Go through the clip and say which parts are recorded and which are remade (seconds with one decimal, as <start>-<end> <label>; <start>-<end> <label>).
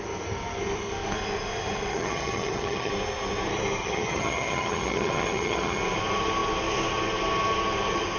0.0-1.9 recorded; 1.9-2.9 remade; 2.9-3.8 recorded; 3.8-5.8 remade; 5.8-8.2 recorded